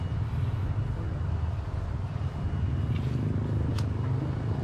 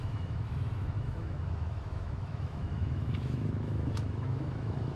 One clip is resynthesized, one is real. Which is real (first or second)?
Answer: first